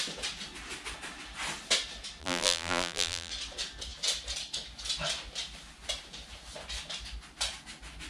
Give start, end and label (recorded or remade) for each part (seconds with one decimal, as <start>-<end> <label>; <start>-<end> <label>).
0.0-2.2 recorded; 2.2-3.3 remade; 3.3-8.1 recorded